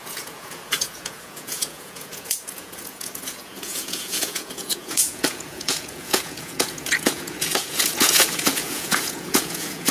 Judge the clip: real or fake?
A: fake